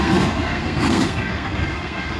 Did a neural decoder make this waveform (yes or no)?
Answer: yes